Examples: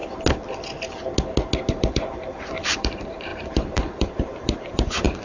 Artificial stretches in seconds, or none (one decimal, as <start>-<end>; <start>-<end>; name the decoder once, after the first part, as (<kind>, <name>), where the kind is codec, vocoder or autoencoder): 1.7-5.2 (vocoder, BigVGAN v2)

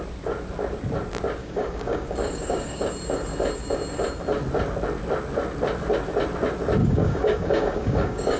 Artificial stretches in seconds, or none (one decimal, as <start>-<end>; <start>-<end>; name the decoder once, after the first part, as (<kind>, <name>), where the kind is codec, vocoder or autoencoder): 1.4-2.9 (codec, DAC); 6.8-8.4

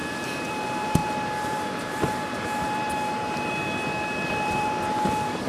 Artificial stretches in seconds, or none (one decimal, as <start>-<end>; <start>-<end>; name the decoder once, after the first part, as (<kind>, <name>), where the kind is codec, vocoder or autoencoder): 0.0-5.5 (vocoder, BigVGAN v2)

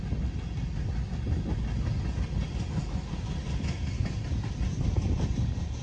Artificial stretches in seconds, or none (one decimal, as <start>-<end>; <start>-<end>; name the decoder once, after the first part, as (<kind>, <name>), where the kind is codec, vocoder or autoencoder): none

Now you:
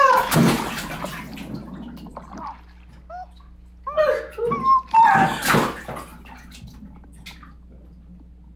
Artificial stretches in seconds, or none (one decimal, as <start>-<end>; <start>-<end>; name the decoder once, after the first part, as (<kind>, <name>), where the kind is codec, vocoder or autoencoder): none

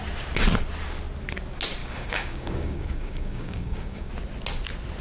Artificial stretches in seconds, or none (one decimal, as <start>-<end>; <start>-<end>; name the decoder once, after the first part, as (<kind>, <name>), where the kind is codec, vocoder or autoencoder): 1.8-4.1 (codec, DAC)